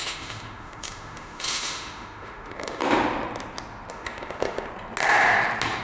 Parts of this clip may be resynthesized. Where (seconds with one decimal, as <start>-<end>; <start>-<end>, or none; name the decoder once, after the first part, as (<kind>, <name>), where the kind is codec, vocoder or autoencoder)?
0.0-2.8 (autoencoder, DAC-VAE); 3.9-4.7